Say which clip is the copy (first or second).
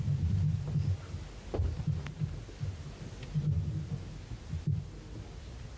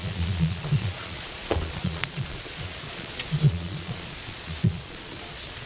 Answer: second